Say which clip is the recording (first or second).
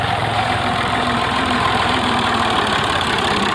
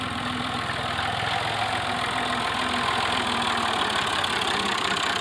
second